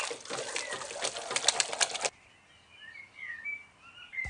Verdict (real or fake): real